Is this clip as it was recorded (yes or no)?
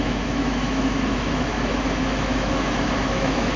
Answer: no